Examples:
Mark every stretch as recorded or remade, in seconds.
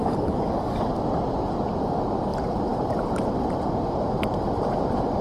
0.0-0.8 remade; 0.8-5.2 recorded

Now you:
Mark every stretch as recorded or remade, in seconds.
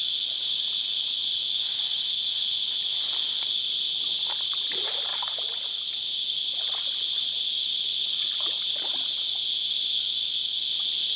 0.0-11.2 recorded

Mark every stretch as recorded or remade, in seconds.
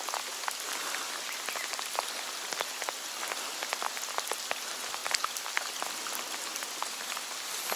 0.0-7.8 recorded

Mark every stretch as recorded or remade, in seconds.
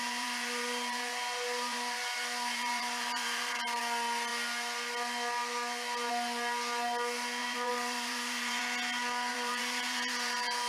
0.0-3.8 remade; 3.8-7.4 recorded; 7.4-8.6 remade; 8.6-9.3 recorded; 9.3-10.7 remade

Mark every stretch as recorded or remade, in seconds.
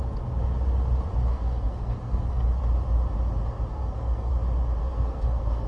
0.0-1.3 recorded; 1.3-2.6 remade; 2.6-3.7 recorded; 3.7-4.3 remade; 4.3-4.8 recorded; 4.8-5.7 remade